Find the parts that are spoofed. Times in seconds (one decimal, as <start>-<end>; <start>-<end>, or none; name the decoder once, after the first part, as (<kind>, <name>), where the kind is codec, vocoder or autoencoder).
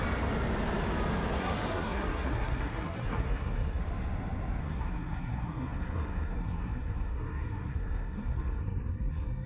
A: 1.4-3.8 (codec, SNAC); 4.6-9.5